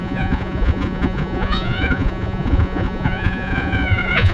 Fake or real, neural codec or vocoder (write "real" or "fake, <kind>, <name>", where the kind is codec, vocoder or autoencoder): fake, vocoder, Vocos